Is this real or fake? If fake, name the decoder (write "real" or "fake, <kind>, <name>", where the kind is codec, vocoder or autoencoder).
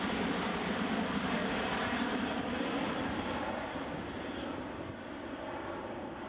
real